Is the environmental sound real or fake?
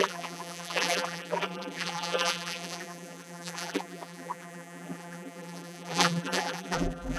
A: fake